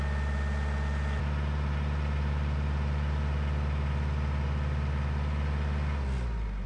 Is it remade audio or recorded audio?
recorded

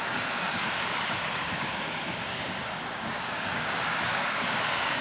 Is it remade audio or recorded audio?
remade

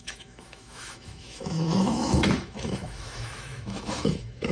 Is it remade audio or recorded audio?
remade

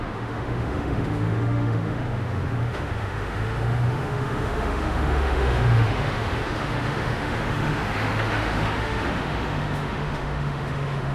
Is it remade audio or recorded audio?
remade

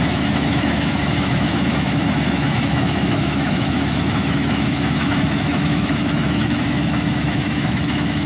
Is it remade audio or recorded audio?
remade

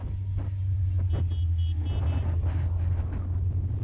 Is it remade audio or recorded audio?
recorded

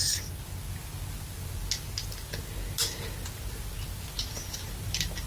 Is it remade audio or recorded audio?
recorded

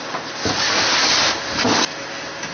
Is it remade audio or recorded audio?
recorded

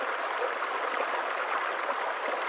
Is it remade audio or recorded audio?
recorded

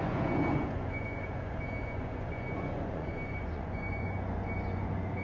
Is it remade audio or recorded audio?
remade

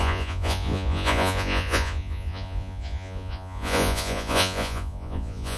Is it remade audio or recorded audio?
remade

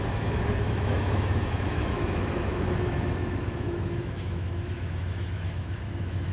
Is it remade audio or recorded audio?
remade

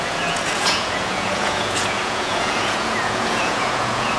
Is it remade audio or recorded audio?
remade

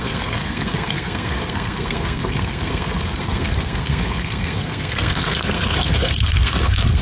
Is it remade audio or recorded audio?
remade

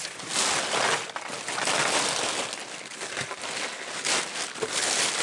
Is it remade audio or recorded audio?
recorded